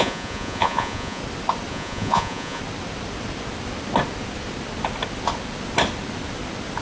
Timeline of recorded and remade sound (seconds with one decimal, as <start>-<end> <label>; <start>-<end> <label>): 0.0-1.2 remade; 1.2-1.7 recorded; 1.7-2.6 remade; 2.6-6.8 recorded